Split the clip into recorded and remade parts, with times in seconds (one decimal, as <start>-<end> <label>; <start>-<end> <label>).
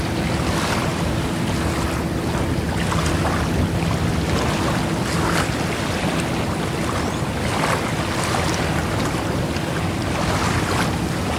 0.0-0.9 recorded; 0.9-1.4 remade; 1.4-8.8 recorded; 8.8-9.4 remade; 9.4-11.4 recorded